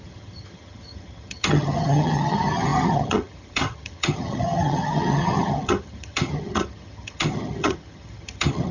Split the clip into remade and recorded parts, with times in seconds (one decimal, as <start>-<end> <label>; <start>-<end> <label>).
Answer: 0.0-8.7 remade